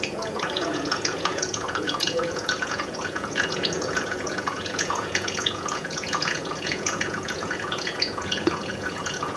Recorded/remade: remade